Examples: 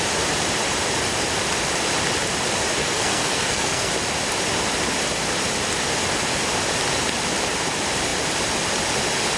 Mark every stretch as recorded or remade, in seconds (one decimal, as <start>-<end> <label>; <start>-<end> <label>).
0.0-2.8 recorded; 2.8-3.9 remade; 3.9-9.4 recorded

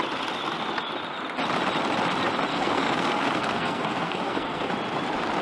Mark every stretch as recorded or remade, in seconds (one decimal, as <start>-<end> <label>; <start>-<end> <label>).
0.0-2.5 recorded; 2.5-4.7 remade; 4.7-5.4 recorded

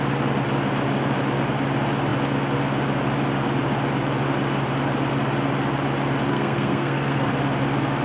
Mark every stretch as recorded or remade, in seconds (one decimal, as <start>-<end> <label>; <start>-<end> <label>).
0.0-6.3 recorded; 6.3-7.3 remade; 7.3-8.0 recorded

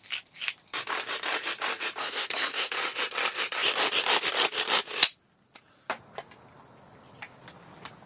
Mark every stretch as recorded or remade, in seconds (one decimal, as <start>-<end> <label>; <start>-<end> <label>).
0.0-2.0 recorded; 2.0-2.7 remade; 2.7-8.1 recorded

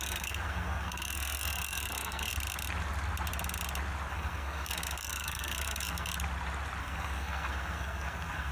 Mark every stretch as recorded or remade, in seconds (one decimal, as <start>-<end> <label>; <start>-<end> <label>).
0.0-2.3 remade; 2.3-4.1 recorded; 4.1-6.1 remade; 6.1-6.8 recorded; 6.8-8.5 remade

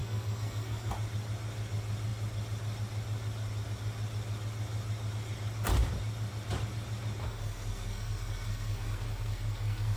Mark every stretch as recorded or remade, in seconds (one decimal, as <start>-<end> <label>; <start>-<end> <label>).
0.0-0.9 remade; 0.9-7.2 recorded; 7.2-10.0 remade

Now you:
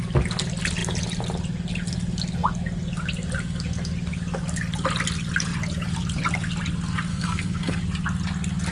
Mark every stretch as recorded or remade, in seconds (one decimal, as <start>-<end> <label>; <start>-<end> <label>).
0.0-7.1 recorded; 7.1-7.8 remade; 7.8-8.7 recorded